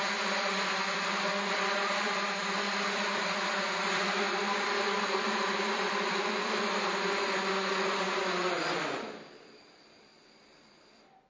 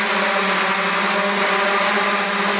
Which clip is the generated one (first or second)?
first